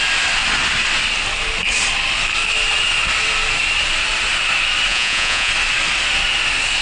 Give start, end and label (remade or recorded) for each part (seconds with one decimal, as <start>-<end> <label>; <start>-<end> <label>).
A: 0.0-4.9 recorded; 4.9-5.5 remade; 5.5-6.8 recorded